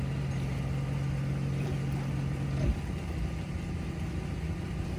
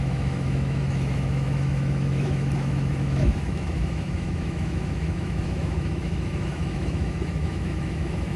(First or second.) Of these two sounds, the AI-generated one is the second